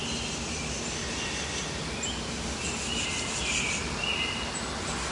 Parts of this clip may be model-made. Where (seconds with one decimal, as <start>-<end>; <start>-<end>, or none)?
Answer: none